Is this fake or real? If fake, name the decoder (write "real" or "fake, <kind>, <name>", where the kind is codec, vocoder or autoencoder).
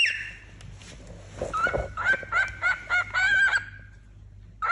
real